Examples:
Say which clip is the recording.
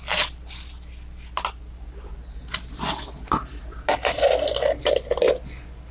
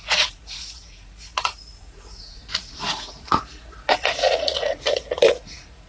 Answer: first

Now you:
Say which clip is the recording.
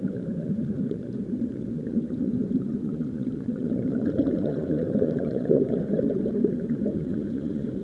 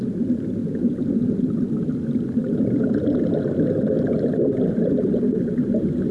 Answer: second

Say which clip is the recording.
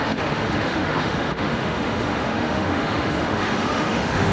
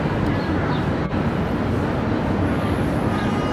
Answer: second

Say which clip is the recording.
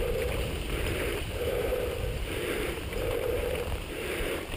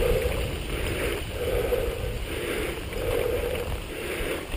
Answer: second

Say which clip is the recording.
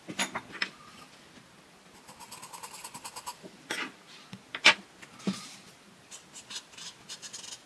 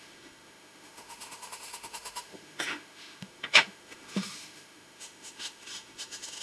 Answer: first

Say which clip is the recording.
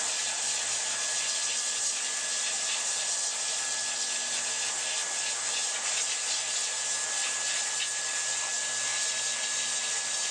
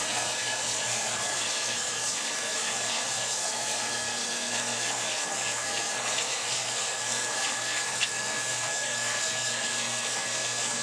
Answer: first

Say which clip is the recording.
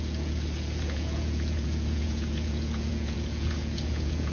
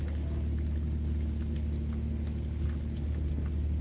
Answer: second